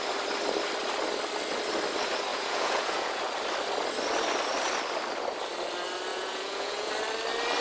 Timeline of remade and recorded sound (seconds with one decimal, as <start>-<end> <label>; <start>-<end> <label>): 0.0-2.3 recorded; 2.3-3.2 remade; 3.2-6.1 recorded; 6.1-6.9 remade; 6.9-7.6 recorded